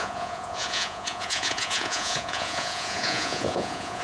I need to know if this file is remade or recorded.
remade